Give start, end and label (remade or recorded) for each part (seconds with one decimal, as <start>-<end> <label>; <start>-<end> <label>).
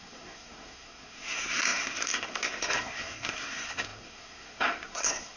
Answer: 0.0-5.4 remade